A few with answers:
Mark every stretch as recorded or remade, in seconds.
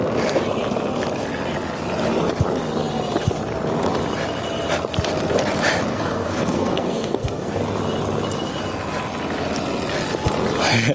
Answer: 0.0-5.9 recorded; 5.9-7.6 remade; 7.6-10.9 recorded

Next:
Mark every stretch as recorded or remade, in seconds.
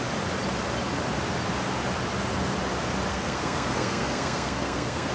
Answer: 0.0-3.1 recorded; 3.1-5.1 remade